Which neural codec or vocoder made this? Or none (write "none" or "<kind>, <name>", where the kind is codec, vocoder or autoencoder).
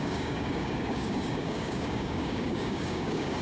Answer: codec, DAC